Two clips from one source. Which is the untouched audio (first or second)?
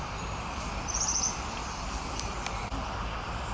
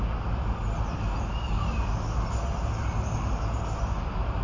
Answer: second